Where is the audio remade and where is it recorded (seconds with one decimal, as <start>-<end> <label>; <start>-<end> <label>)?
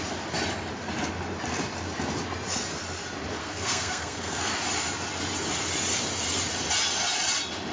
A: 0.0-3.4 recorded; 3.4-4.5 remade; 4.5-7.7 recorded